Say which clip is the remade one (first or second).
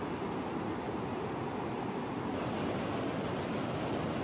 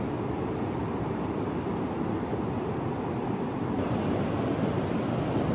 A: second